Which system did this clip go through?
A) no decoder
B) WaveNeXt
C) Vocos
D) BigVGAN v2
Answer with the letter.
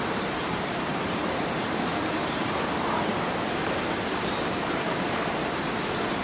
D